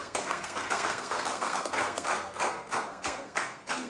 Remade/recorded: remade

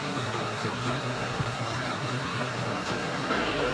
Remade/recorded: remade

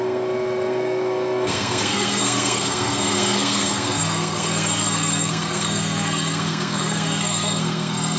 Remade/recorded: remade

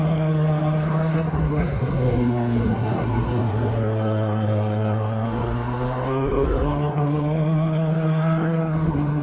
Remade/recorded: remade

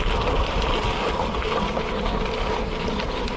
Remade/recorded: recorded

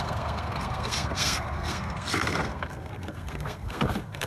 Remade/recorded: remade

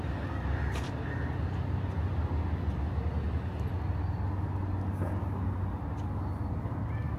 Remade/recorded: recorded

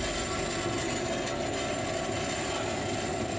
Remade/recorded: recorded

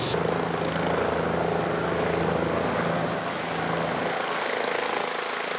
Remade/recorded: recorded